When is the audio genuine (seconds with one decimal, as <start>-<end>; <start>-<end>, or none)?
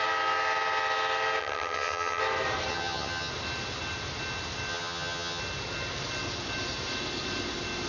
0.0-1.4; 2.2-2.7; 3.3-4.7; 5.4-7.9